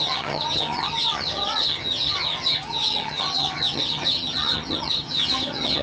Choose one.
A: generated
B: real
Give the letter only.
A